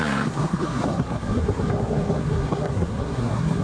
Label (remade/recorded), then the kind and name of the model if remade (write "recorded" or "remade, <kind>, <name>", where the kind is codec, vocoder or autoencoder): remade, codec, SNAC